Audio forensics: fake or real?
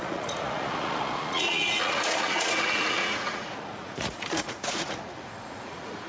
fake